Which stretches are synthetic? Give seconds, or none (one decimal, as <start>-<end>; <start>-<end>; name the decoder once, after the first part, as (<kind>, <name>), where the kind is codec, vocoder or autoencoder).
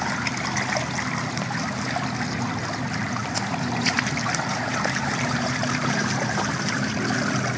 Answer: 3.2-4.0 (vocoder, BigVGAN v2); 4.5-6.9